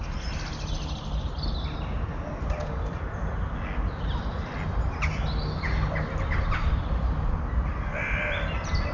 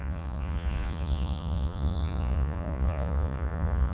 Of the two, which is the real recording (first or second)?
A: first